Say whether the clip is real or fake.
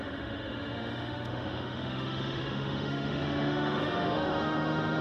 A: fake